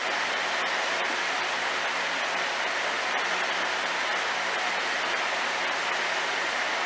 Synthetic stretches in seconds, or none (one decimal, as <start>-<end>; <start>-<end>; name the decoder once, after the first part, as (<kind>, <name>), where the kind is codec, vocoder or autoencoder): none